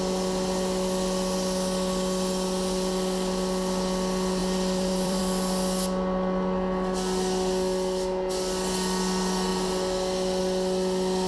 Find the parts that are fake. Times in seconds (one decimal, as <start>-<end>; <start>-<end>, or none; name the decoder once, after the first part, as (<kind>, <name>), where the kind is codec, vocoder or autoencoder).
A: 4.4-5.2 (vocoder, BigVGAN v2)